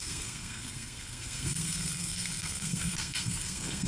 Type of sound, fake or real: fake